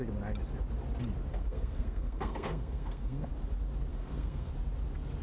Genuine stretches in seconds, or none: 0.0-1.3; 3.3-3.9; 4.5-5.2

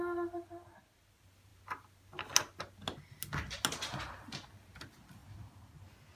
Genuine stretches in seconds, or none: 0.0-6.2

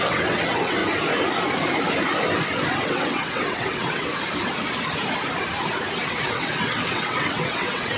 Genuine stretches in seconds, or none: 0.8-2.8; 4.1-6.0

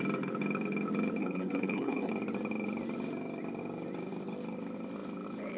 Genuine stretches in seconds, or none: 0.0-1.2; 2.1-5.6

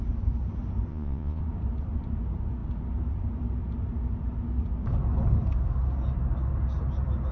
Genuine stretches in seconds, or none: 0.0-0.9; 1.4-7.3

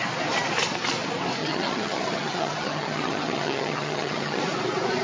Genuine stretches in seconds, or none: 0.0-1.4; 4.4-5.0